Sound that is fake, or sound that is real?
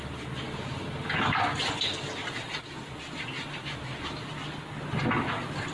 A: real